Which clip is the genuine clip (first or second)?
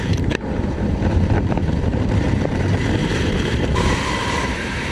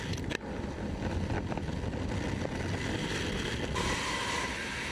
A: second